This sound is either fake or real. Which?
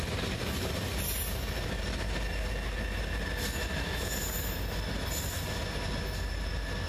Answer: real